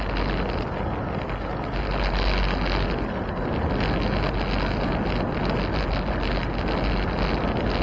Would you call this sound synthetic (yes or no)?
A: no